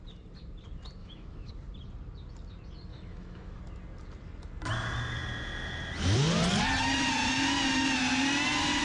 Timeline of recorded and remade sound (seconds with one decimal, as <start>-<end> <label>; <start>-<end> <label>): 0.0-1.0 recorded; 1.0-1.5 remade; 1.5-2.9 recorded; 2.9-3.6 remade; 3.6-8.8 recorded